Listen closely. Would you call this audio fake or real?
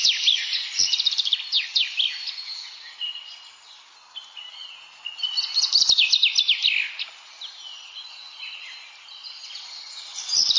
real